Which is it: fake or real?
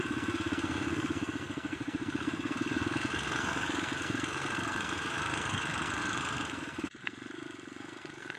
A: fake